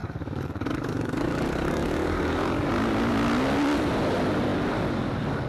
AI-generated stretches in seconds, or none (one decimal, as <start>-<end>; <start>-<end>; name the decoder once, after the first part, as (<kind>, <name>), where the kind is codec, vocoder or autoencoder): 0.0-2.7 (codec, DAC)